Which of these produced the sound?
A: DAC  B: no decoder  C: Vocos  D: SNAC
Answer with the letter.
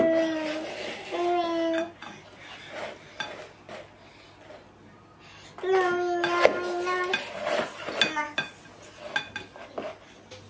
B